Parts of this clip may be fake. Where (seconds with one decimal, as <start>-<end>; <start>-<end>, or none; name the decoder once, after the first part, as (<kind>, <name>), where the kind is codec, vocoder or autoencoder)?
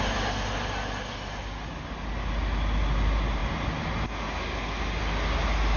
none